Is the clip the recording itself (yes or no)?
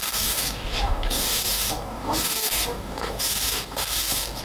no